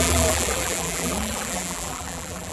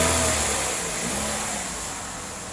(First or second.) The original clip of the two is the second